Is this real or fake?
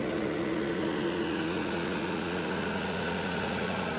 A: fake